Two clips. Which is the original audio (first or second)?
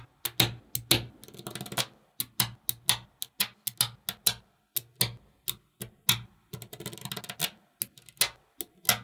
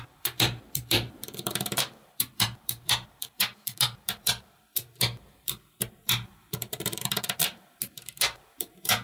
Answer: first